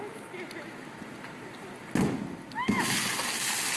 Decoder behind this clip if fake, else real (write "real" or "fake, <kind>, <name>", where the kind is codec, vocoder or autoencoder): real